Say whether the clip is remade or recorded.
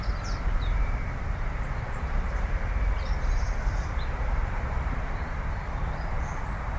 remade